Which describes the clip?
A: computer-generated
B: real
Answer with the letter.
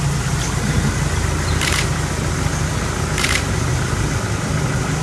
B